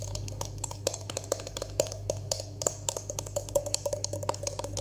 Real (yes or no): no